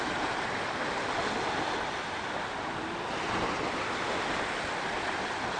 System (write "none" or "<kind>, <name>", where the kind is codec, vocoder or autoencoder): none